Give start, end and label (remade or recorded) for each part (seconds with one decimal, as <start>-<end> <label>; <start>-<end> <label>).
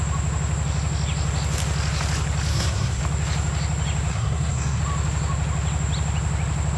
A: 0.0-2.5 recorded; 2.5-3.0 remade; 3.0-4.1 recorded; 4.1-4.8 remade; 4.8-6.8 recorded